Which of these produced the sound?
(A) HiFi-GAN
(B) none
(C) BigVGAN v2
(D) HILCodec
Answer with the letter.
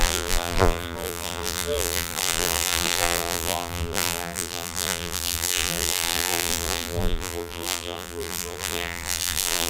C